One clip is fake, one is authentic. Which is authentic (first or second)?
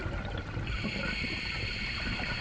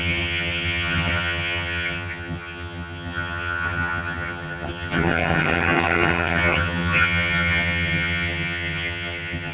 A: first